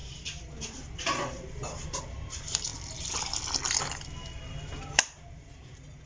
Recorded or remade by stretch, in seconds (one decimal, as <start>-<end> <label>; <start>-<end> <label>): 0.0-2.0 recorded; 2.0-2.7 remade; 2.7-4.8 recorded; 4.8-6.1 remade